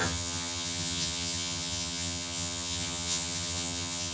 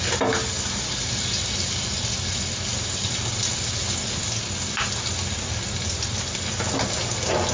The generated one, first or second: first